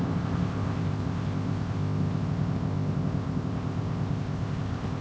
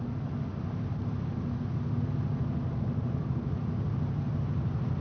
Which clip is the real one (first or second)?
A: second